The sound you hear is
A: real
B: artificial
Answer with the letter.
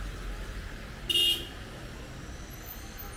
A